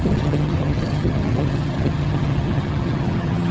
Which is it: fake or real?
fake